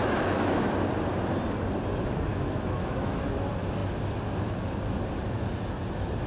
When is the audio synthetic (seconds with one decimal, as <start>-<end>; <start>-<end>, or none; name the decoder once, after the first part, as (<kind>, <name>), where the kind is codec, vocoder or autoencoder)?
0.0-0.7 (autoencoder, DAC-VAE); 2.3-3.3